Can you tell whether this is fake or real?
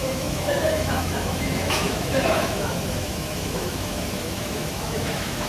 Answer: fake